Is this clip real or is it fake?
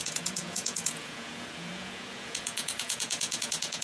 fake